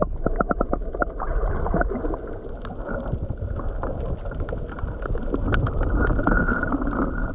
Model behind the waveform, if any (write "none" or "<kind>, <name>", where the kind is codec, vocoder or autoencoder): none